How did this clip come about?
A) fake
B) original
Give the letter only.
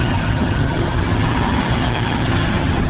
A